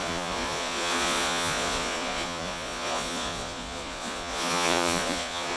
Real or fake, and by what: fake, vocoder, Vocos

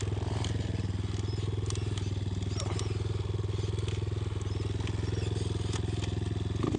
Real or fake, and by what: real